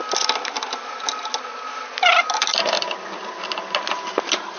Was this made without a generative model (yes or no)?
yes